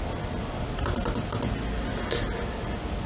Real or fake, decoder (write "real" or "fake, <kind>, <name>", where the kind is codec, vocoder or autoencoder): real